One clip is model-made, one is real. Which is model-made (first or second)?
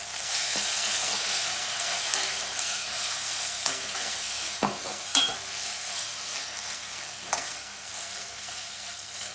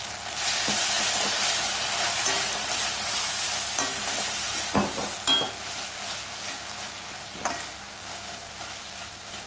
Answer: first